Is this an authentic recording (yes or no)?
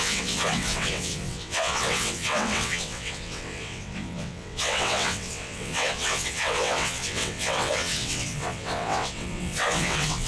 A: no